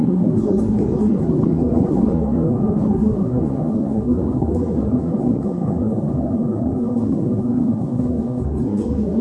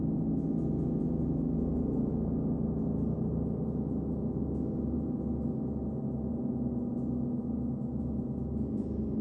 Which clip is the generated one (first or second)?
first